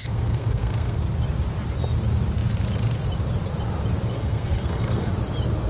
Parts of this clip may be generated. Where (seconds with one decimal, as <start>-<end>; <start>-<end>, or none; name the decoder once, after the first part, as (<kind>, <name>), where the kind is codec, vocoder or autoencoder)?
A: 0.0-1.0 (codec, SNAC); 4.1-5.1